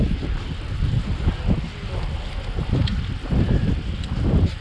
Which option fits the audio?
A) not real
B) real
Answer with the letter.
B